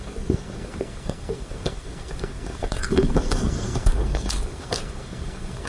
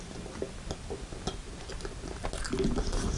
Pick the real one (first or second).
second